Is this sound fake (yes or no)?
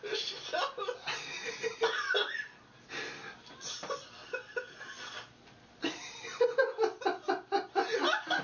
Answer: yes